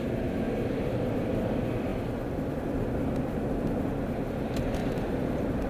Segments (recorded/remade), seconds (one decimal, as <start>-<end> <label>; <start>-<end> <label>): 0.0-4.8 recorded; 4.8-5.7 remade